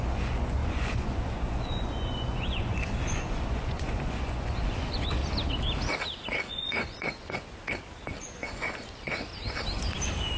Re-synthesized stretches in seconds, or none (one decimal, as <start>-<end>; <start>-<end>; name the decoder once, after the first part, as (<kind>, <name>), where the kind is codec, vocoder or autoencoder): 0.0-5.2 (vocoder, Vocos); 6.5-7.6; 8.2-9.3